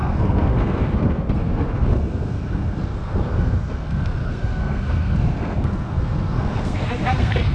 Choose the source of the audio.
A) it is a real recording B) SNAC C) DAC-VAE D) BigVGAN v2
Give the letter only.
B